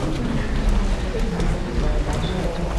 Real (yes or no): yes